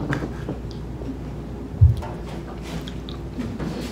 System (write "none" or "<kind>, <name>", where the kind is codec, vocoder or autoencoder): none